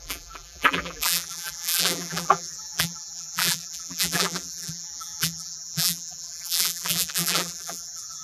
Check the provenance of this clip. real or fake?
fake